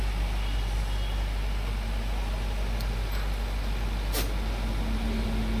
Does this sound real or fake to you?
real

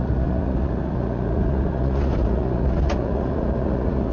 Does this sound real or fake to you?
fake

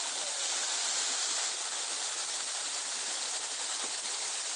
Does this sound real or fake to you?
real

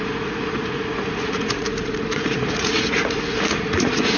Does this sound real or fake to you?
fake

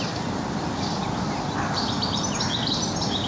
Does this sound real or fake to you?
real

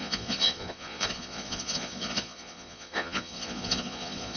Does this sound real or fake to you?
fake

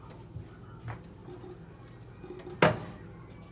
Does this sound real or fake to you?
real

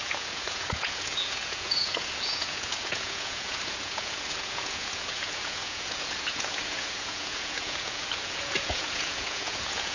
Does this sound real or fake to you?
fake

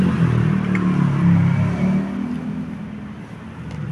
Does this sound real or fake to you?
real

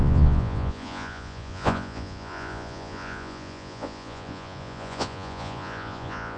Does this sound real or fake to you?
fake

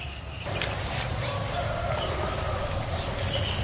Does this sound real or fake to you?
real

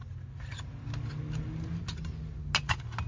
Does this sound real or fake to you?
real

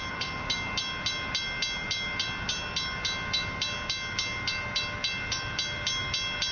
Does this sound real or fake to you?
real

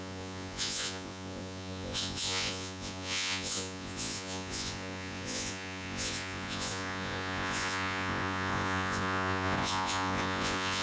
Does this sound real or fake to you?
fake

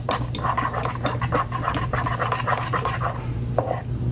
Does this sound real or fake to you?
real